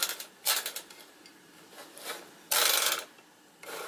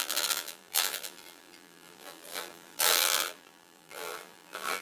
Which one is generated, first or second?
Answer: second